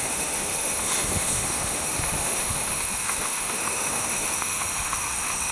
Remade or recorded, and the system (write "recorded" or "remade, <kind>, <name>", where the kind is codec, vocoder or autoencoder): remade, autoencoder, DAC-VAE